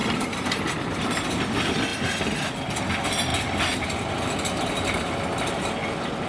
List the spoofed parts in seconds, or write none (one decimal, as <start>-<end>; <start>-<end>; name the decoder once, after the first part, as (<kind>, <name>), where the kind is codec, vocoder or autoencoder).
0.0-1.4 (vocoder, BigVGAN v2)